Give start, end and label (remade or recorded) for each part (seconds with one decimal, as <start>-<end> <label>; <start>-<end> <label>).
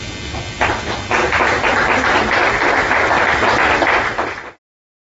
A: 0.0-5.0 recorded